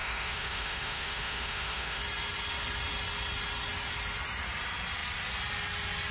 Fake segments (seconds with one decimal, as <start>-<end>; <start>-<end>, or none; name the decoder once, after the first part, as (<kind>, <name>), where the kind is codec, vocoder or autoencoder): 0.0-2.0 (autoencoder, DAC-VAE)